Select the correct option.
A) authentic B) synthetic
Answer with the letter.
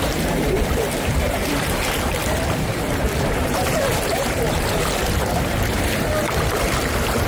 B